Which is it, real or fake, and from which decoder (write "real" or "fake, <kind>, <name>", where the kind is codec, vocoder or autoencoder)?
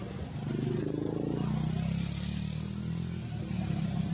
real